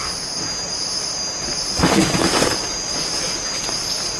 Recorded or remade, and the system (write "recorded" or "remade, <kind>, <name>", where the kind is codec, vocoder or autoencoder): recorded